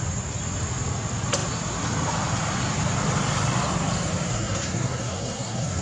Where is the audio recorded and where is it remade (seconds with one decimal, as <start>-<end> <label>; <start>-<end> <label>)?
0.0-4.3 recorded; 4.3-5.8 remade